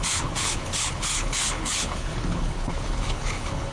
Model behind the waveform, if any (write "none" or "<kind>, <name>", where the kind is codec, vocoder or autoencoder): codec, HILCodec